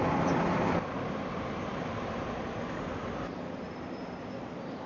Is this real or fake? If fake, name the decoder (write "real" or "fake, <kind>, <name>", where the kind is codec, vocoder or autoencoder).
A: fake, vocoder, BigVGAN v2